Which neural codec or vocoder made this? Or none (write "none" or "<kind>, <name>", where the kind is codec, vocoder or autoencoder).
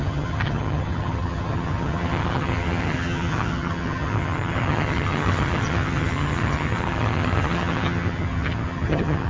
vocoder, HiFi-GAN